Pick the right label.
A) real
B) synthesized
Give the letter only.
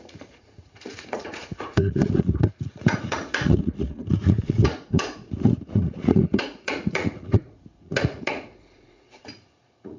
B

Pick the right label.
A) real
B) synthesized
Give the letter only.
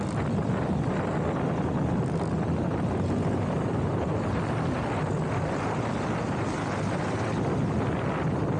A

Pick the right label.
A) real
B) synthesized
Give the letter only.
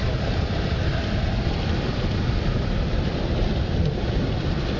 B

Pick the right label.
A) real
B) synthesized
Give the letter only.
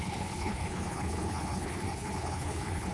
B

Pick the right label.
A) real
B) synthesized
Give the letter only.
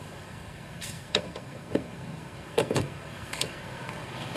B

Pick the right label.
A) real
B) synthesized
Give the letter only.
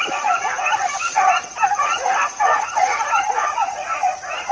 B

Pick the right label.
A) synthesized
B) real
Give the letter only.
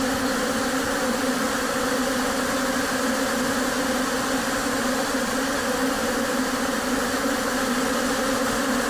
B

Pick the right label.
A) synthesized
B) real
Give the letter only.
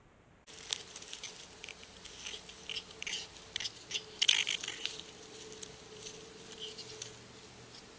B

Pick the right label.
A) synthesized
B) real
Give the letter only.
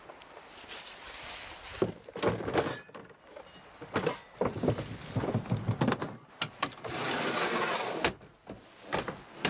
B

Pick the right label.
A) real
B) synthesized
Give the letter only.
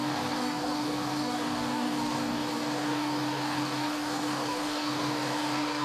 B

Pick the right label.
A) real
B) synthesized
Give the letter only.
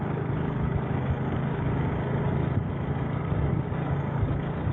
B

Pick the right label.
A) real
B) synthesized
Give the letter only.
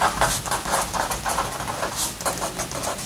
A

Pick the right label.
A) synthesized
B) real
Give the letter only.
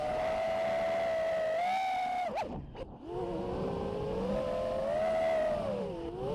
B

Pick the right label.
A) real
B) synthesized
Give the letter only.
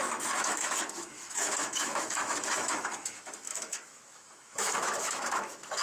B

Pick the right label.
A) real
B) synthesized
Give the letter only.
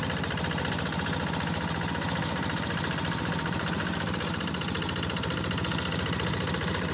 A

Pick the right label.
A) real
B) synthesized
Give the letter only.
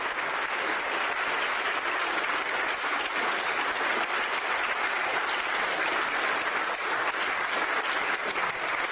A